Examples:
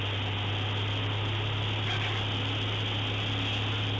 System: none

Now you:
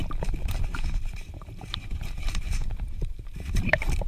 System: vocoder, BigVGAN v2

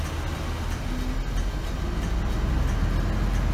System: none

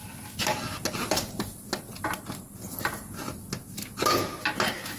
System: none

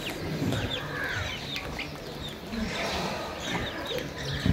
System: none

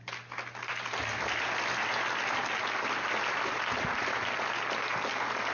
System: none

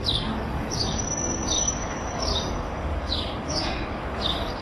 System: codec, DAC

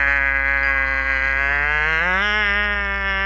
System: none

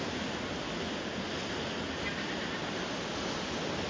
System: none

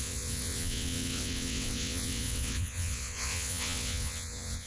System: vocoder, WaveNeXt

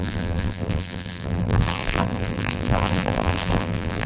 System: vocoder, BigVGAN v2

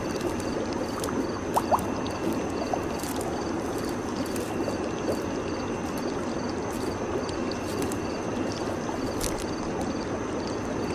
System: none